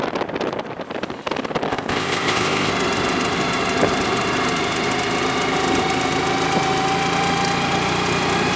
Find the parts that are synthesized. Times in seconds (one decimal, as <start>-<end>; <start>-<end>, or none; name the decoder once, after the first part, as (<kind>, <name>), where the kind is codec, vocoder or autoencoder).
1.7-2.7 (codec, ZipCodec)